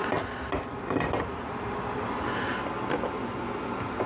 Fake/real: real